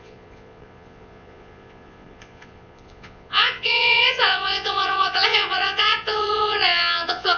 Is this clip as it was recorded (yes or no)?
no